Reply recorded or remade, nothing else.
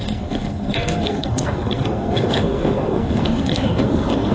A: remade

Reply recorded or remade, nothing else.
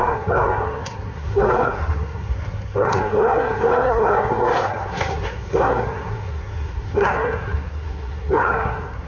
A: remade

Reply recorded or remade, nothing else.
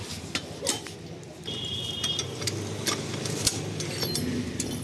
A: recorded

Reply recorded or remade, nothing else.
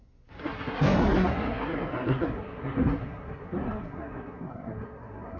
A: remade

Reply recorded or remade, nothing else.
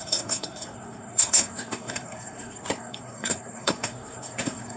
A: remade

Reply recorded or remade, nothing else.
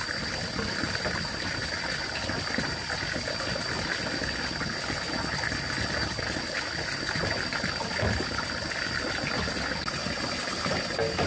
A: recorded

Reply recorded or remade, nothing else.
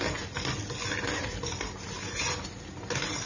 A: recorded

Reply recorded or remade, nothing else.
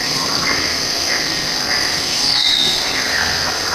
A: remade